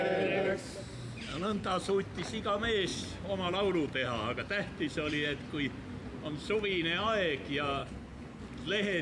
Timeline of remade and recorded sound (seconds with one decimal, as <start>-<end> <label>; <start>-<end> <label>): 0.0-1.3 recorded; 1.3-1.9 remade; 1.9-7.8 recorded; 7.8-8.4 remade; 8.4-9.0 recorded

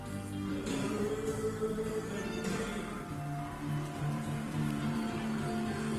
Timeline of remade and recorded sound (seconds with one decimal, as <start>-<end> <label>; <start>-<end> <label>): 0.0-0.5 recorded; 0.5-3.1 remade; 3.1-4.0 recorded; 4.0-5.5 remade; 5.5-6.0 recorded